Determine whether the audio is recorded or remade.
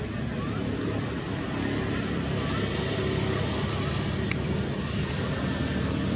recorded